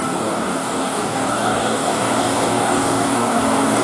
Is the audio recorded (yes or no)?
no